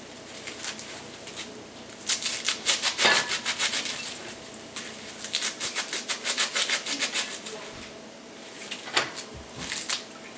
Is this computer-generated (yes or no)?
no